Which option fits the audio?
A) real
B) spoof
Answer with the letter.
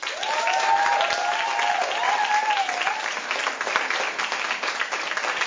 A